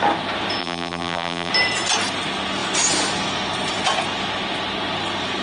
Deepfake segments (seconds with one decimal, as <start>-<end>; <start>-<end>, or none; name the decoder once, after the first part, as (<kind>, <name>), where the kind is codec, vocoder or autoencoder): 0.6-1.5 (vocoder, BigVGAN v2)